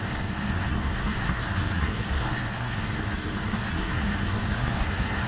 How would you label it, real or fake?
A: fake